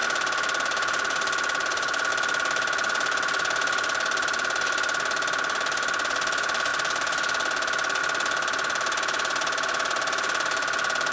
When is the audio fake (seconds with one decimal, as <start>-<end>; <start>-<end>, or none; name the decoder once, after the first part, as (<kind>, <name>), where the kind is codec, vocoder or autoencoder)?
none